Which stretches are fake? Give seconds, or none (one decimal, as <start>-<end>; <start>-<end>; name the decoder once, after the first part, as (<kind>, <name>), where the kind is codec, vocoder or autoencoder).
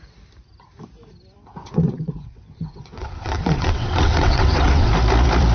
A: 1.6-4.9 (vocoder, WaveNeXt)